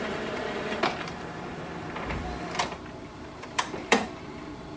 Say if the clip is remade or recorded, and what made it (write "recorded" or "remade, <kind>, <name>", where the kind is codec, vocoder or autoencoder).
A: remade, vocoder, BigVGAN v2